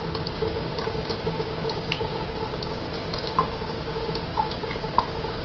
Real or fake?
fake